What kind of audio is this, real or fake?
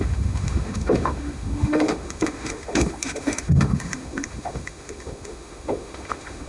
fake